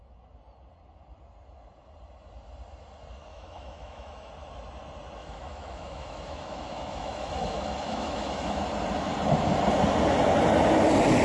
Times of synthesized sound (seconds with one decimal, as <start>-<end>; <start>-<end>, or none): 3.3-4.3; 5.2-8.6